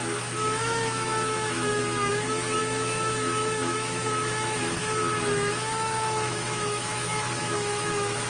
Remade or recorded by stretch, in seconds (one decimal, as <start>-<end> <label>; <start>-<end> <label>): 0.0-8.3 remade